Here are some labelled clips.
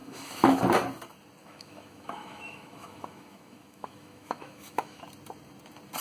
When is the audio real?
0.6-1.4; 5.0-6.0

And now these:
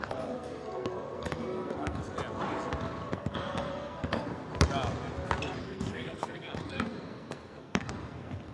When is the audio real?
2.1-3.1; 4.5-5.6

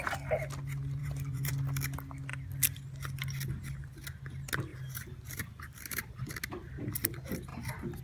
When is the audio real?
0.0-1.0; 1.5-4.7; 6.3-8.0

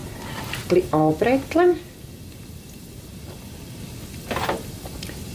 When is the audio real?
0.0-5.3